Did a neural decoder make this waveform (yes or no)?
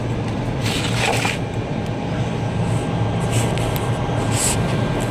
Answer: no